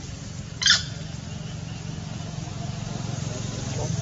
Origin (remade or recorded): recorded